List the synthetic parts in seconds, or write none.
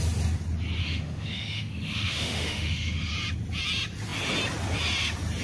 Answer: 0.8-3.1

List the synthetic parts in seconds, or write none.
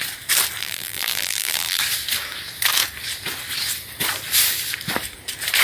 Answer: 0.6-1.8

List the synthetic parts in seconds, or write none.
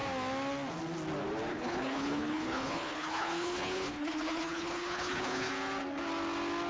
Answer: 1.5-5.5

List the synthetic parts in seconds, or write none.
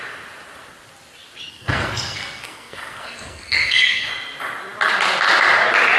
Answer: 1.5-4.1